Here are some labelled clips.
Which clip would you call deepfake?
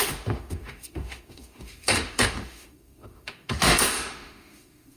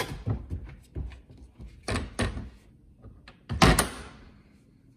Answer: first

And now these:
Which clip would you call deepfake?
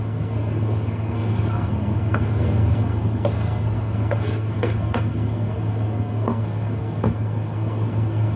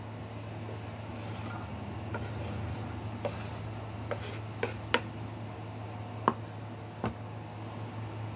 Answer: first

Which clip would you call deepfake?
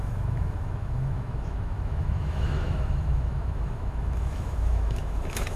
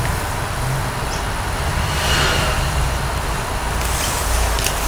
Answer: first